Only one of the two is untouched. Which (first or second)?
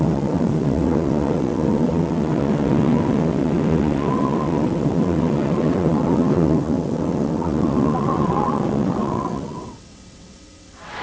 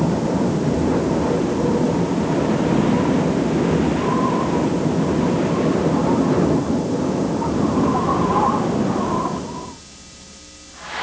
second